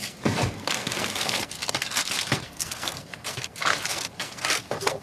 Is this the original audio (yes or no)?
no